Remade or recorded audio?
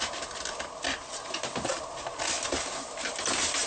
recorded